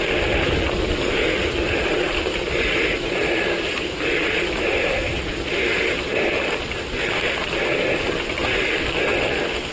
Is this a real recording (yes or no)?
yes